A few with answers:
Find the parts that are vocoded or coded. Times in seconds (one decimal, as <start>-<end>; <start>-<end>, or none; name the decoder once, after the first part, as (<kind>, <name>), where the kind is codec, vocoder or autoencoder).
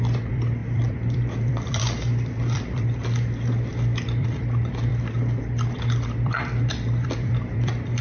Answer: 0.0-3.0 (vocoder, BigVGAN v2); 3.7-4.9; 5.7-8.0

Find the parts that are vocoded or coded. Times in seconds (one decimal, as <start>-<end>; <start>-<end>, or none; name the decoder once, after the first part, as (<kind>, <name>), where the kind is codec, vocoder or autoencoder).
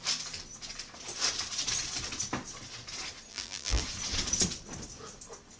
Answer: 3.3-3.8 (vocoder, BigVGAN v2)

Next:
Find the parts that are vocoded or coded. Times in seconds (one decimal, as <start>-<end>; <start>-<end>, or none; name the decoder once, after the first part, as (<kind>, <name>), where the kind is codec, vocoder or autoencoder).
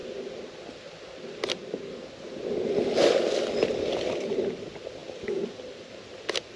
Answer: none